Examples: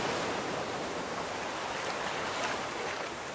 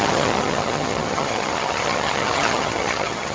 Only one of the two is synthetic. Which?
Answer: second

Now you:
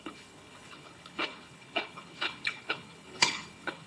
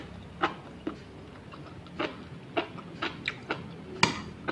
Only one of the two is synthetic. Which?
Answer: first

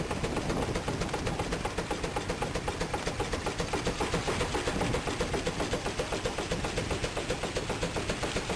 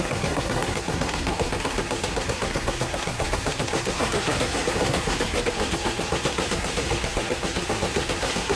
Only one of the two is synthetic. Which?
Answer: second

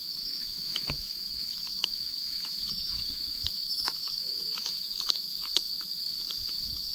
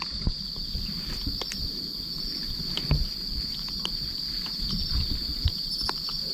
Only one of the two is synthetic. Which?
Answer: first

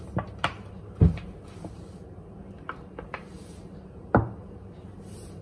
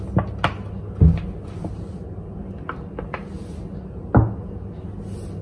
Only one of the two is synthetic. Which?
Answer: first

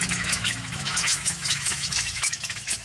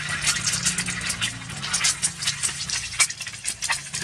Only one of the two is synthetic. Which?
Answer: first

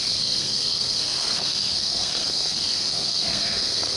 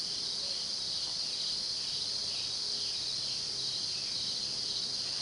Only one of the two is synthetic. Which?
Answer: first